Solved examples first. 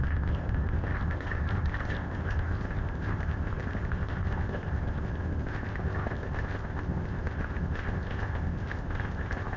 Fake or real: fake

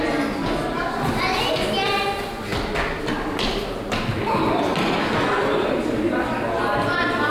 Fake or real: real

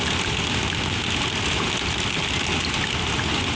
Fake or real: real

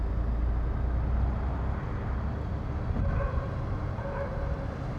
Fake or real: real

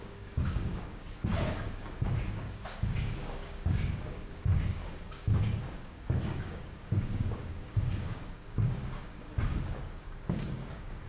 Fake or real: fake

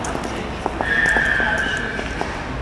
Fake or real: real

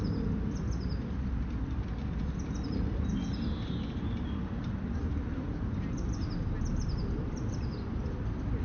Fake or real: real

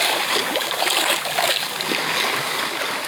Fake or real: fake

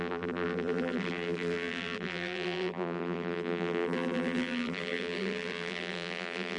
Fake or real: fake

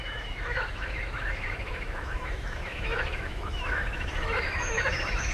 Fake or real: fake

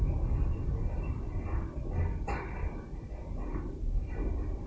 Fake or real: real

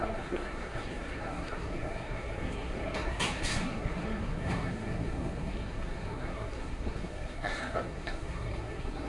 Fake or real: fake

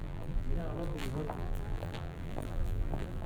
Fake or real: fake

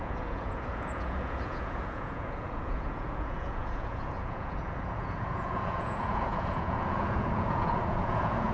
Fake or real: fake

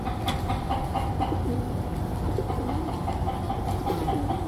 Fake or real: real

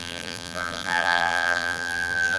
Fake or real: fake